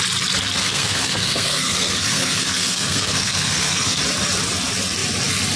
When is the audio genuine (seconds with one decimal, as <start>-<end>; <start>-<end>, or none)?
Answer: 0.0-0.6; 4.0-5.6